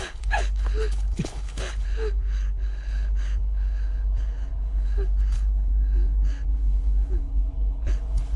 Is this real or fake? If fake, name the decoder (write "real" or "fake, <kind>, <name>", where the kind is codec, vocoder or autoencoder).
fake, codec, HILCodec